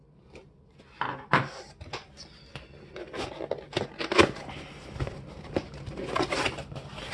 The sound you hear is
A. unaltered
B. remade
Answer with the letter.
A